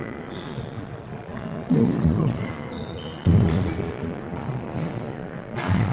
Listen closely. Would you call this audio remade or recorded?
remade